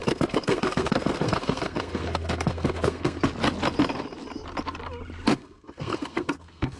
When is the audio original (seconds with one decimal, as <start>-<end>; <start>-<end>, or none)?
3.2-5.3